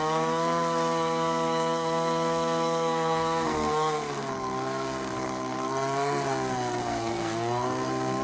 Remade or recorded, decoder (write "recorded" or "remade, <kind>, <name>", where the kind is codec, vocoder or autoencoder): remade, codec, SNAC